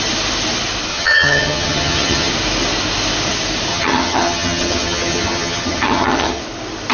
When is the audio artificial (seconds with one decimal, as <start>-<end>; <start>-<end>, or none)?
0.9-2.3; 3.7-6.4